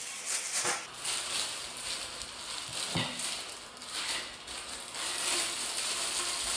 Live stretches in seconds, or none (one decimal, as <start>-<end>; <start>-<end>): 0.0-6.6